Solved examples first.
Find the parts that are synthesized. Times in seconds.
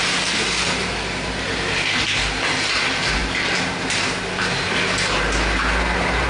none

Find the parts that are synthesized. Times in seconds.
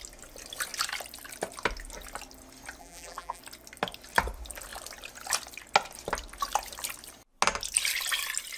2.8-3.4 (vocoder, BigVGAN v2)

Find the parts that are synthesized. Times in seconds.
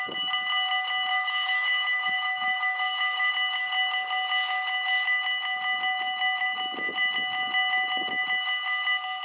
1.1-3.3 (autoencoder, DAC-VAE)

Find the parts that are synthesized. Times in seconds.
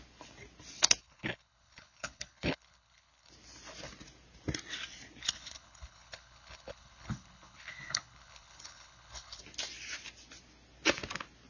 1.0-3.3 (codec, HILCodec); 5.2-9.4